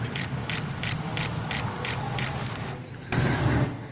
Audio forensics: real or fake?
real